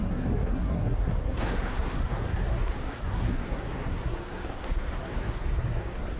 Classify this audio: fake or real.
fake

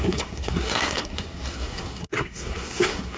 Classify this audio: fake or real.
fake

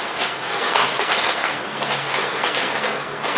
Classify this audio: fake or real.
fake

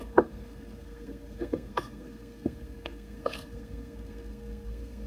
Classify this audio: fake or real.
fake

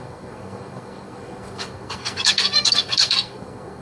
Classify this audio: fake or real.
fake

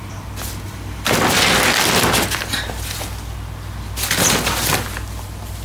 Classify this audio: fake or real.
real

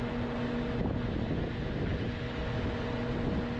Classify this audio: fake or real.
real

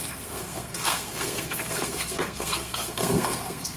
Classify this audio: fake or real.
fake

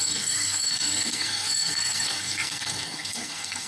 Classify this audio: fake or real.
fake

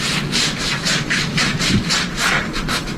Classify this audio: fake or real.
real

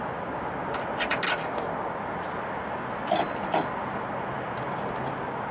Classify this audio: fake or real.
real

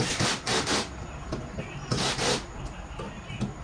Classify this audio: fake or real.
real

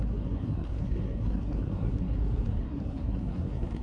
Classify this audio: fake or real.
fake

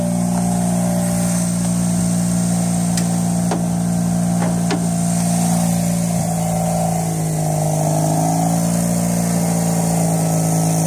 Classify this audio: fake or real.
real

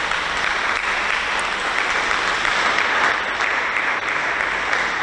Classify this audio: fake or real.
real